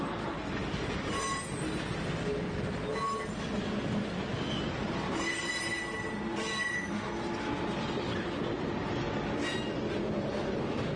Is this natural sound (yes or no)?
yes